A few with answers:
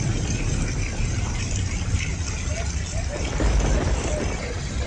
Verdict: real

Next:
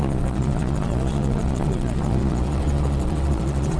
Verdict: fake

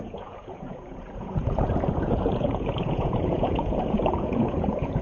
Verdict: fake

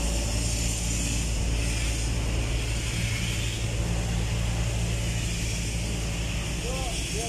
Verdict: real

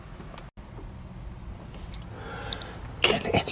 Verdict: real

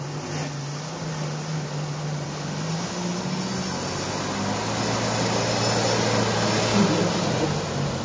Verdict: real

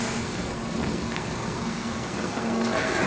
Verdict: fake